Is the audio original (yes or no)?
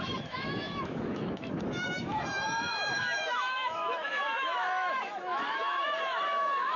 no